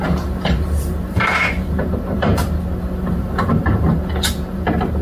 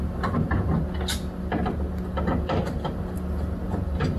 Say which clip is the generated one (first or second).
first